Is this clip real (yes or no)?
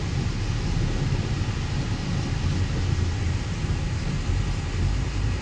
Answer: yes